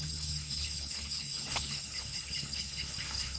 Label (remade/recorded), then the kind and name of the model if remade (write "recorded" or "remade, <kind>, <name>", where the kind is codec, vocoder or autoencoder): remade, codec, HILCodec